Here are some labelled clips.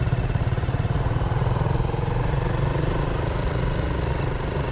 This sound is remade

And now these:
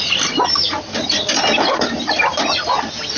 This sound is recorded